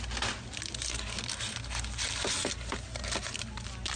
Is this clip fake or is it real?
real